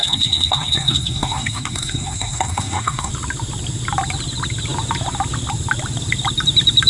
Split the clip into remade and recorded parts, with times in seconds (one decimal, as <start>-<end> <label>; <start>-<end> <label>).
0.0-3.1 remade; 3.1-6.9 recorded